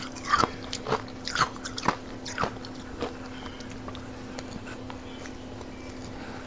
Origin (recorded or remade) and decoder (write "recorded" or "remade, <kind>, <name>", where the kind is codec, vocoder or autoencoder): recorded